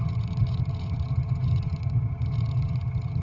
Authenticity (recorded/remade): remade